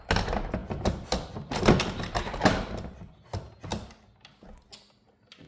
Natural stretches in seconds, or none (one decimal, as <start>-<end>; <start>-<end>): 0.0-5.5